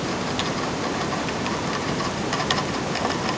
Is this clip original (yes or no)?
yes